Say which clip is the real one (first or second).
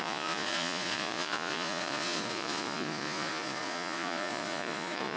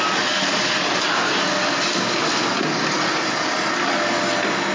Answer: second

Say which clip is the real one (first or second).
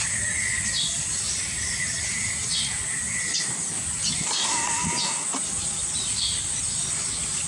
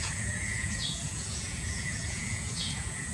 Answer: first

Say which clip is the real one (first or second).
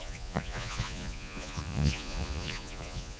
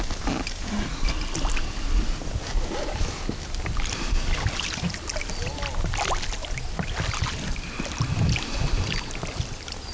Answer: second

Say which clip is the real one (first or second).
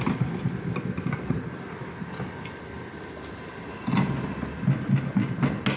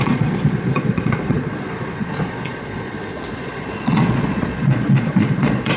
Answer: first